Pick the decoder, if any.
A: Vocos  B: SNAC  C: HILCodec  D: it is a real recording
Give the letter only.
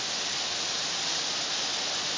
D